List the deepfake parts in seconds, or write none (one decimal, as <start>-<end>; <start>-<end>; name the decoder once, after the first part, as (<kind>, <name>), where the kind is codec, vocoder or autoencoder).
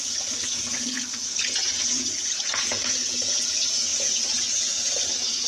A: 0.0-5.5 (vocoder, Vocos)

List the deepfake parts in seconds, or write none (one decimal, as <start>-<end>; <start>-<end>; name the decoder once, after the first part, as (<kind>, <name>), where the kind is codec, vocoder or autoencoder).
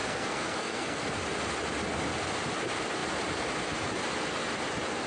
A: 0.0-1.0 (codec, SNAC)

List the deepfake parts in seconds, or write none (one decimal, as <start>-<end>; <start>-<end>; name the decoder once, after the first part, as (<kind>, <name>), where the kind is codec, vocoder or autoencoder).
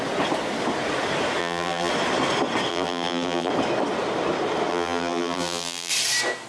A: 1.4-1.9 (vocoder, BigVGAN v2); 2.7-3.5; 4.7-5.9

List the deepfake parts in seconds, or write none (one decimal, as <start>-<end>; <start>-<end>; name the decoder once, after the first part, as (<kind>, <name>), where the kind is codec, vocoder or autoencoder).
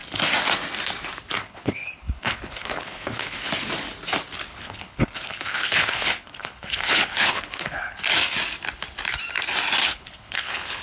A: 1.4-3.5 (codec, HILCodec); 4.5-8.0; 9.8-10.8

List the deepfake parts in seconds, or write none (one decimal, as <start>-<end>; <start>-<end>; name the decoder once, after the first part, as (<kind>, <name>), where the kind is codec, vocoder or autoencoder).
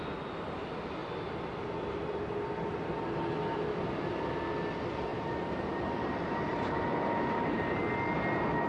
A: 5.1-5.9 (vocoder, BigVGAN v2); 6.5-7.8